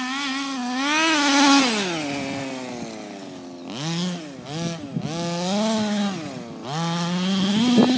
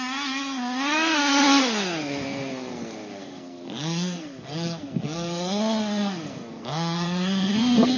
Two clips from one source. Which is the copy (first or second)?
second